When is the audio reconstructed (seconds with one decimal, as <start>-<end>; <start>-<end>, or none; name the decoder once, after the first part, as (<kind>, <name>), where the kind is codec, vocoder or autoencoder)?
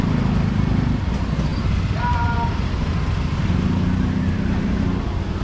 none